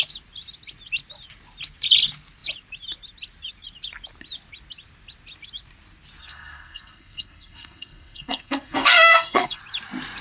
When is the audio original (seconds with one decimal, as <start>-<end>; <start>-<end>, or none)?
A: 0.0-6.2; 9.6-10.2

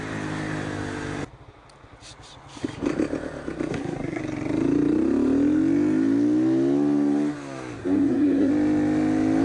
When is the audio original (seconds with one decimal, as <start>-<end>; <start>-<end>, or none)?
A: 0.0-3.7; 4.2-7.8; 8.5-9.4

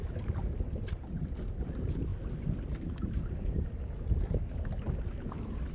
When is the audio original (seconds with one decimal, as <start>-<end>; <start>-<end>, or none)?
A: 0.0-5.7

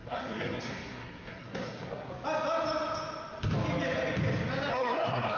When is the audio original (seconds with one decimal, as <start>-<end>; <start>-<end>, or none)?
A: 2.1-4.7

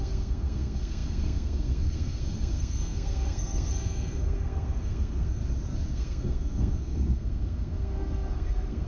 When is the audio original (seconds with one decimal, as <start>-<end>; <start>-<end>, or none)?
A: 5.4-5.9

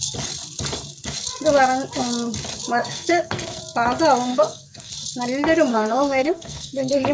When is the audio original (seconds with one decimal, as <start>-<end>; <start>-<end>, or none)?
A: 0.0-2.8; 3.6-4.3; 4.9-5.7